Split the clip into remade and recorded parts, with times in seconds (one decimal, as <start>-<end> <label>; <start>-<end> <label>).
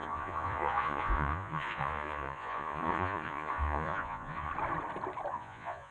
0.0-4.5 remade; 4.5-5.3 recorded; 5.3-5.9 remade